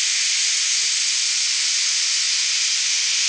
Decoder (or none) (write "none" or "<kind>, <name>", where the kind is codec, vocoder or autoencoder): none